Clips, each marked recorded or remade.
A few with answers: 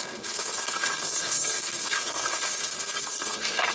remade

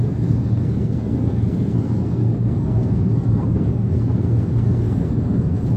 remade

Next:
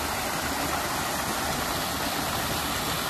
recorded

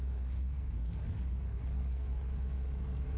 remade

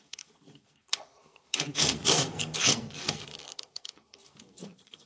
remade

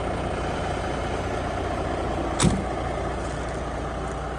recorded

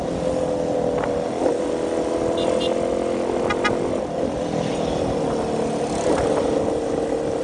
recorded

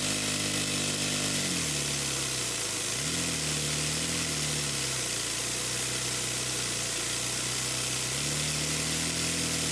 recorded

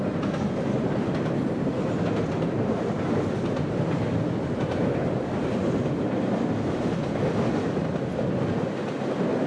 recorded